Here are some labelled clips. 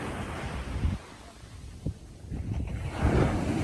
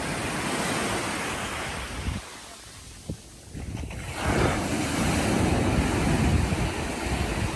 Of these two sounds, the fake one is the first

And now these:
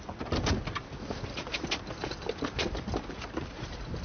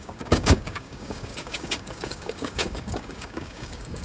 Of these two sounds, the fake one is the second